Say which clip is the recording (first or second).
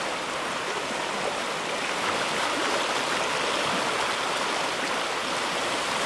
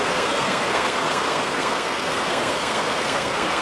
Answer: first